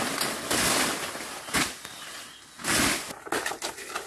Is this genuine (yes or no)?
yes